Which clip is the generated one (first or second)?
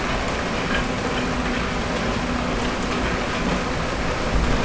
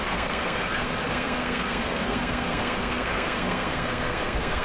second